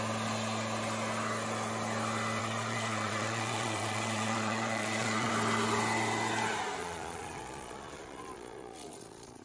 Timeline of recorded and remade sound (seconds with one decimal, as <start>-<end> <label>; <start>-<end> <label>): 0.0-2.4 recorded; 2.4-5.3 remade; 5.3-6.8 recorded; 6.8-9.4 remade